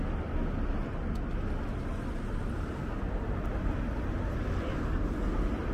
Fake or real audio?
real